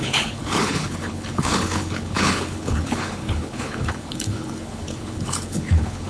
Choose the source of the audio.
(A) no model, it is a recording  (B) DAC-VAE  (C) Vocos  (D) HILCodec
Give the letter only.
D